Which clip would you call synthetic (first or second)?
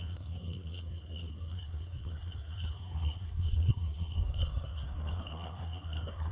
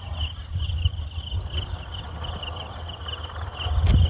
first